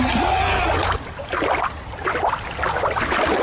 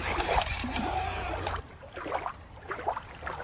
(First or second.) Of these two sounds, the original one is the first